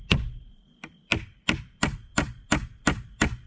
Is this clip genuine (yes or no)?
yes